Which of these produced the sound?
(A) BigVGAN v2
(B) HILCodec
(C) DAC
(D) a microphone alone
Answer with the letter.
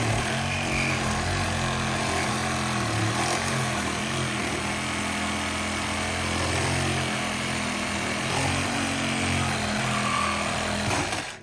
D